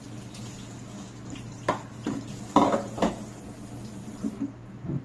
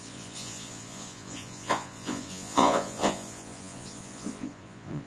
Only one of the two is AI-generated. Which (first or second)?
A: second